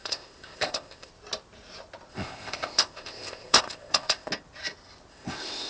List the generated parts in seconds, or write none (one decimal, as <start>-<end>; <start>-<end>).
0.0-1.1; 2.1-4.3; 5.1-5.7